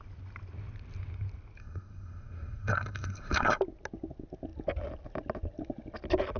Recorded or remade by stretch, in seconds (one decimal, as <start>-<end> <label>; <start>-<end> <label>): 0.0-1.6 recorded; 1.6-3.6 remade; 3.6-6.4 recorded